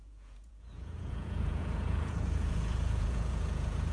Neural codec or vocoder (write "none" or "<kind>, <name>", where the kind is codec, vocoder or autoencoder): vocoder, Vocos